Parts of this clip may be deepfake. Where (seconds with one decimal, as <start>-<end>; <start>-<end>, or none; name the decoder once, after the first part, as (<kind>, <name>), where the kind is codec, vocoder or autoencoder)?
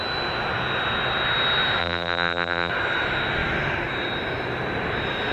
1.8-2.7 (vocoder, BigVGAN v2)